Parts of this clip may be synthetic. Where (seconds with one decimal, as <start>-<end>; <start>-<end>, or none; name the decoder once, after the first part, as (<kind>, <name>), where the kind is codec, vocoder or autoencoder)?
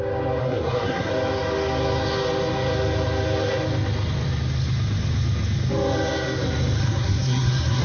0.4-1.1 (codec, SNAC); 6.8-7.8